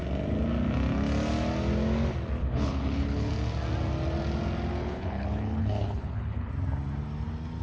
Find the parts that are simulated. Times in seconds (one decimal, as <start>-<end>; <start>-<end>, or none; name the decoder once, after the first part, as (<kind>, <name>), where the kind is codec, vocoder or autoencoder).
2.4-3.3 (codec, HILCodec); 4.8-6.5